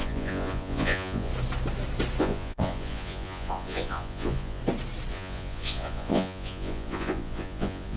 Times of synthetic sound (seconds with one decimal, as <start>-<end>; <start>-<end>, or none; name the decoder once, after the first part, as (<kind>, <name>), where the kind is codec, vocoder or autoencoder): 0.0-1.3 (vocoder, Vocos); 2.2-4.6; 5.1-8.0